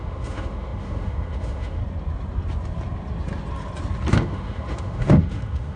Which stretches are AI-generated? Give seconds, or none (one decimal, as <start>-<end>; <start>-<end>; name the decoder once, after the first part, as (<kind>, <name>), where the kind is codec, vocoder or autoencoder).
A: 0.0-1.8 (autoencoder, DAC-VAE); 4.1-5.8